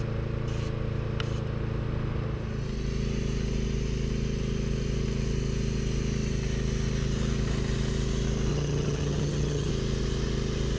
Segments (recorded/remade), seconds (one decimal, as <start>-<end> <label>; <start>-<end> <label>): 0.0-8.5 recorded; 8.5-9.7 remade; 9.7-10.8 recorded